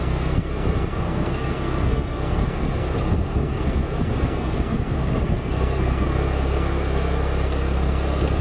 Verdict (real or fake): fake